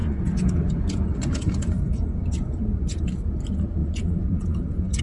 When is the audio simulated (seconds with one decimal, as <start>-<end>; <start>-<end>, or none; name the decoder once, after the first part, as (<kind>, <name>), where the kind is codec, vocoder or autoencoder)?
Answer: 0.0-3.0 (vocoder, Vocos); 3.8-5.0